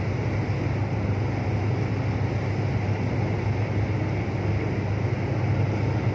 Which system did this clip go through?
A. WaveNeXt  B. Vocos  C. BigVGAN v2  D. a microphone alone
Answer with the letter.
D